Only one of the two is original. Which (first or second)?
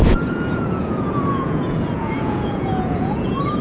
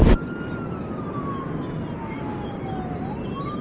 second